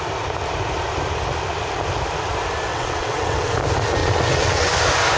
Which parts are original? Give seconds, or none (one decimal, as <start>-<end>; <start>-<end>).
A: 0.0-2.7; 3.5-4.0; 4.7-5.2